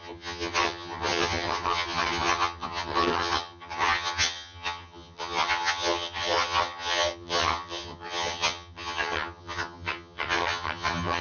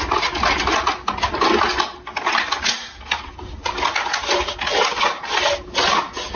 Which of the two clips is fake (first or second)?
first